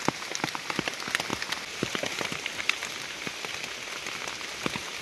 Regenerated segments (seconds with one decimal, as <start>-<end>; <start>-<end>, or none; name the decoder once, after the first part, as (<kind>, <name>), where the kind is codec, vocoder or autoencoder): none